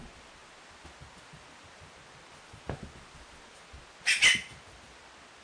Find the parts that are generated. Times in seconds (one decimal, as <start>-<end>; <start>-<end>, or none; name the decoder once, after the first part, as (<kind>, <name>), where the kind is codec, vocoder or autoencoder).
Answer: none